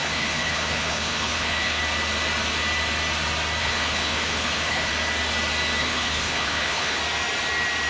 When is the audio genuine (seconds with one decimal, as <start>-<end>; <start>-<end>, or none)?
1.8-3.6; 4.9-5.8; 7.0-7.9